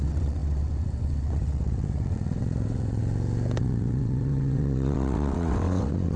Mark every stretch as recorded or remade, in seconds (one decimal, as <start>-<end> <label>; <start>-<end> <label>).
0.0-3.0 remade; 3.0-3.6 recorded; 3.6-6.2 remade